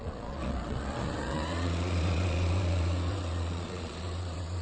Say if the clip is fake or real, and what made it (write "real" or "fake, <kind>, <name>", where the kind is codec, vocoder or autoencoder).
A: fake, vocoder, Vocos